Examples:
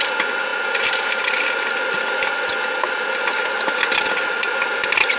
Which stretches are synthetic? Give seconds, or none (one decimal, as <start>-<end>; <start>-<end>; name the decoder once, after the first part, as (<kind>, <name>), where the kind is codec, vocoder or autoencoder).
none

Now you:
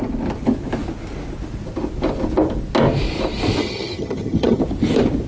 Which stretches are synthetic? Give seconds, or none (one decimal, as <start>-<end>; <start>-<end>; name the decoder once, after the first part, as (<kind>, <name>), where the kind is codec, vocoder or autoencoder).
3.6-4.6 (vocoder, HiFi-GAN)

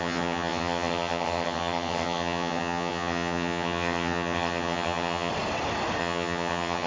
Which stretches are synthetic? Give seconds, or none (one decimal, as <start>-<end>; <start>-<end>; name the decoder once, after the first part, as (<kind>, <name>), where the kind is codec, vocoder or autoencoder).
0.0-5.3 (vocoder, HiFi-GAN); 6.0-6.9